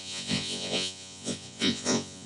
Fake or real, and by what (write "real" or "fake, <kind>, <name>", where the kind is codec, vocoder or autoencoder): fake, vocoder, Vocos